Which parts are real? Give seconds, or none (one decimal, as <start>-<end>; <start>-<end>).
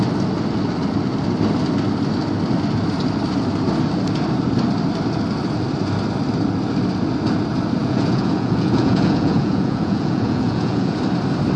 0.0-7.8; 11.0-11.6